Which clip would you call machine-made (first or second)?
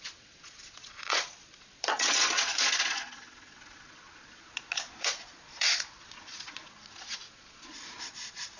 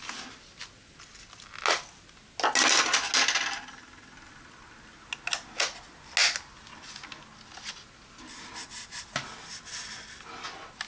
first